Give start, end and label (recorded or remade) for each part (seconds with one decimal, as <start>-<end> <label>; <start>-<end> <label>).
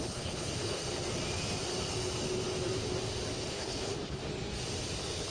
0.0-0.8 remade; 0.8-3.4 recorded; 3.4-4.2 remade; 4.2-5.3 recorded